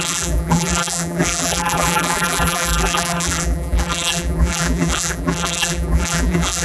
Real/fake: fake